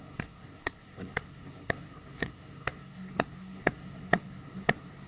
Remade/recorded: remade